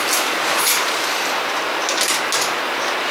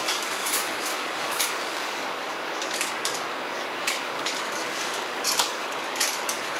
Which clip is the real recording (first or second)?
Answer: first